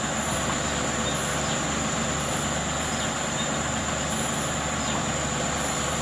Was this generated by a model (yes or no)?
no